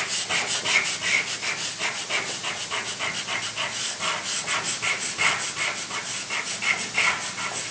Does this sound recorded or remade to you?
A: recorded